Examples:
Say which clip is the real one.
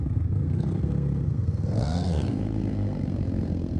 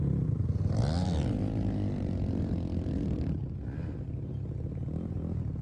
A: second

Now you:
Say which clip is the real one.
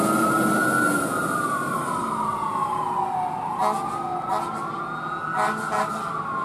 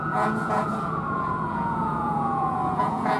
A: first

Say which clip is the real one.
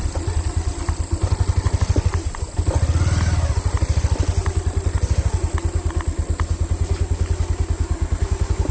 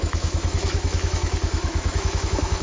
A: first